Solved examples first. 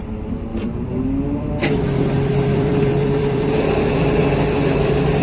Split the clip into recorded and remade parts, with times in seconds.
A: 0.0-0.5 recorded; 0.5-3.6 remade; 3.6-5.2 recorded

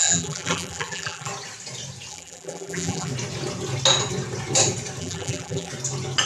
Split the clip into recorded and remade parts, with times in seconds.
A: 0.0-1.3 remade; 1.3-2.1 recorded; 2.1-3.1 remade; 3.1-5.0 recorded; 5.0-5.7 remade; 5.7-6.3 recorded

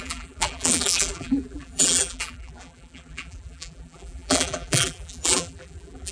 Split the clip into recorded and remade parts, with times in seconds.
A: 0.0-6.1 remade